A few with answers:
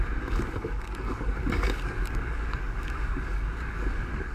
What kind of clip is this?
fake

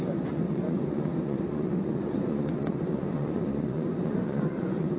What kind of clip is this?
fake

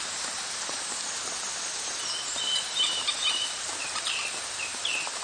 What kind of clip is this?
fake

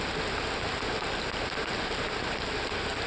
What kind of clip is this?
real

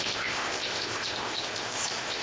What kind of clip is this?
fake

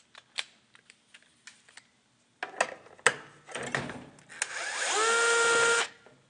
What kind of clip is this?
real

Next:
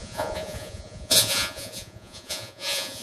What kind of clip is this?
fake